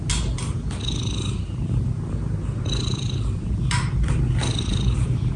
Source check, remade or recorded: recorded